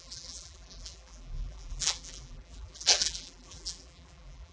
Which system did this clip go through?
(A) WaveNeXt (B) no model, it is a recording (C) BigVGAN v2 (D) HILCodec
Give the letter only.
C